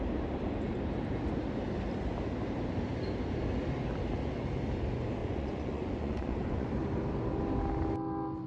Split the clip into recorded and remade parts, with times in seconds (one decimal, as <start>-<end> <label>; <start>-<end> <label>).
0.0-5.2 recorded; 5.2-6.7 remade; 6.7-8.5 recorded